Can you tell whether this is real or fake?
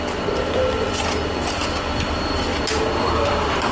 real